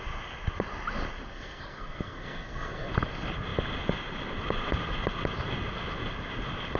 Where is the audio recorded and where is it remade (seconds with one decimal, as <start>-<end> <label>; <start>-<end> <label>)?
0.0-1.3 recorded; 1.3-2.9 remade; 2.9-6.8 recorded